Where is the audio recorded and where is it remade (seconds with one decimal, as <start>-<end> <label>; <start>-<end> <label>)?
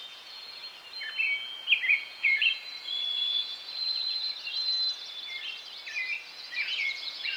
0.0-0.6 remade; 0.6-1.9 recorded; 1.9-4.0 remade; 4.0-6.3 recorded; 6.3-7.4 remade